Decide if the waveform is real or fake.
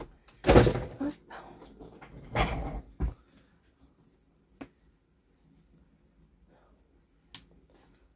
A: real